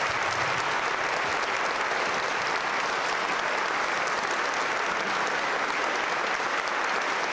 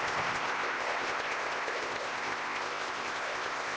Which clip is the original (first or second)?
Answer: first